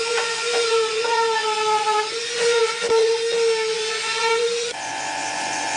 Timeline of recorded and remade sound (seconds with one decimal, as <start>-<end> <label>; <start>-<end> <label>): 0.0-3.2 remade; 3.2-3.7 recorded; 3.7-5.8 remade